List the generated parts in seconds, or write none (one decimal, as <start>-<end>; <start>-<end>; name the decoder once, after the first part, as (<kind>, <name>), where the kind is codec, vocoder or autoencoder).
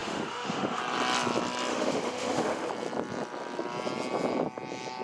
0.0-0.8 (autoencoder, DAC-VAE); 1.7-2.7